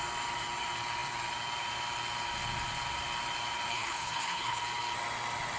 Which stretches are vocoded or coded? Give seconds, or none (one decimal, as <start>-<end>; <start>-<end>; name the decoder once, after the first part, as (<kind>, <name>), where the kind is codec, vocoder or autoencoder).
3.7-4.6 (codec, HILCodec)